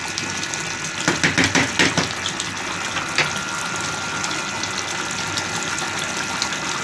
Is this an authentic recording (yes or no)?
yes